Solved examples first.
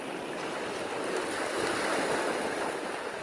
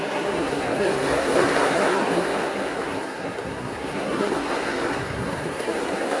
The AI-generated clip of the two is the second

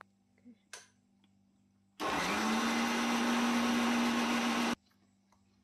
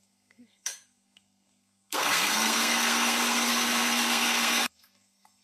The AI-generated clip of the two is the second